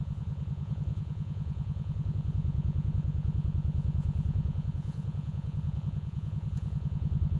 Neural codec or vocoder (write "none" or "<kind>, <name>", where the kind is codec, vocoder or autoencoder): vocoder, Vocos